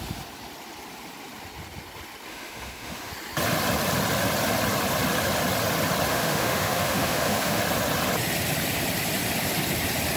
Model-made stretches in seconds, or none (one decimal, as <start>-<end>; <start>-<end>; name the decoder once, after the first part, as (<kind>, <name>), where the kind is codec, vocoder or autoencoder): 2.3-3.1 (autoencoder, DAC-VAE); 6.1-7.6

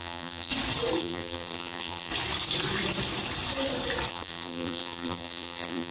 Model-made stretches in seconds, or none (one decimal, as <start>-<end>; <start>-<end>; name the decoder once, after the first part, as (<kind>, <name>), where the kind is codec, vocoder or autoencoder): 0.0-0.5 (vocoder, BigVGAN v2); 1.0-2.1; 4.1-5.9

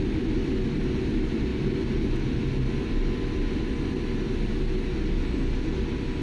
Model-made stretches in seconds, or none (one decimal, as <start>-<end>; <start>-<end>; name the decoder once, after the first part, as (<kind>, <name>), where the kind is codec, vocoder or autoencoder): none

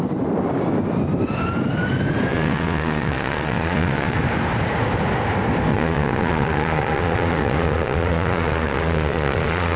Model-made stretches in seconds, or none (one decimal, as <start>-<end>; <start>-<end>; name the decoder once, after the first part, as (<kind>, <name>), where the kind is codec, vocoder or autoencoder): 2.3-4.2 (vocoder, Vocos); 5.7-9.8